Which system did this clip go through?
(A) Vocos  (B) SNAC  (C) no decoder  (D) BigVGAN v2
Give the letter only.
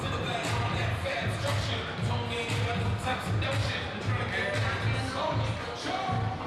C